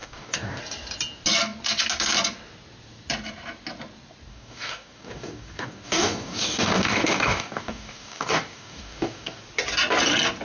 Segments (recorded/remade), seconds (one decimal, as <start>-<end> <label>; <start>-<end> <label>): 0.0-0.6 remade; 0.6-4.3 recorded; 4.3-9.4 remade; 9.4-10.4 recorded